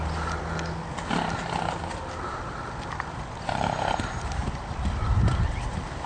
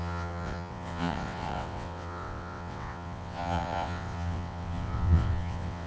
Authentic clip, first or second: first